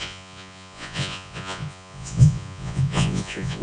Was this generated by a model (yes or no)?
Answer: yes